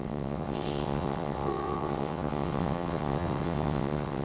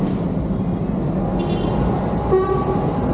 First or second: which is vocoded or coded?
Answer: first